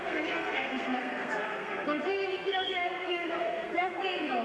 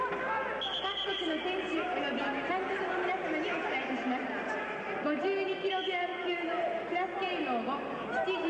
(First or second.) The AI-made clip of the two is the first